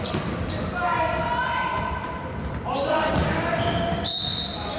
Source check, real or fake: real